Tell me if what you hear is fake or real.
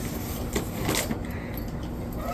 real